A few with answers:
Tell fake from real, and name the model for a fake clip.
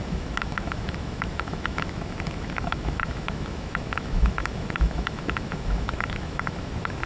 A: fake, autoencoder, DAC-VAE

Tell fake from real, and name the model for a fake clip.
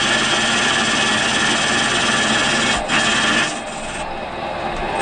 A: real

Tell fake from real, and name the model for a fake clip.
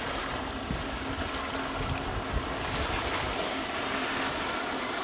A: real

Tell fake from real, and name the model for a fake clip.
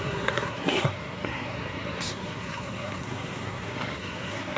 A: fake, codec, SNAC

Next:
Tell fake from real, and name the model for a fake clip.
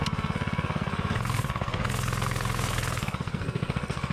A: fake, codec, SNAC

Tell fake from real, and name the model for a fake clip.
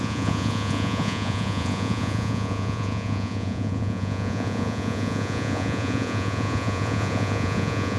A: fake, vocoder, Vocos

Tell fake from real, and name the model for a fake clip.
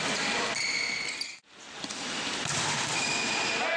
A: real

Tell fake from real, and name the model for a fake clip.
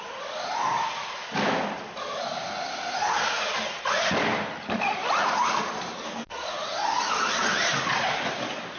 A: real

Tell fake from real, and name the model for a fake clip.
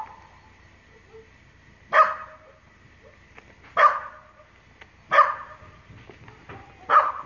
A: real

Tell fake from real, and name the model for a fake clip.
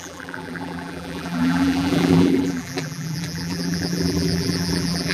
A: fake, vocoder, BigVGAN v2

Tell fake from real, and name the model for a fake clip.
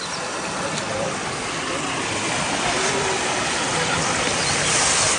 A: real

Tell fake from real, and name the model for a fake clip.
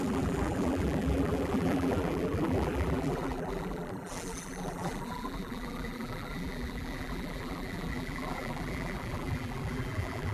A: fake, vocoder, BigVGAN v2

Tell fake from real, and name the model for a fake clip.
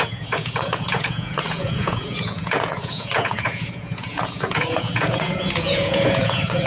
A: fake, vocoder, Vocos